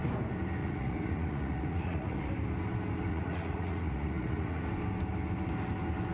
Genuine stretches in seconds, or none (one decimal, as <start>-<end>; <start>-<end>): 0.0-0.6; 2.3-3.1; 4.6-6.1

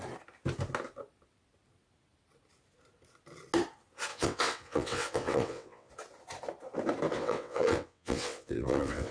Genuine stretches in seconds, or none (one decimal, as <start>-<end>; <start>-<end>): 0.0-4.1; 5.9-7.1

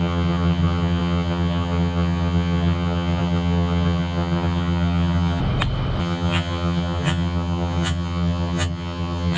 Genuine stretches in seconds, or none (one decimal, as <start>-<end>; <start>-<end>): 5.4-6.0